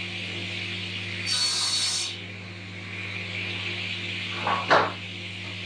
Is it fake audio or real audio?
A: real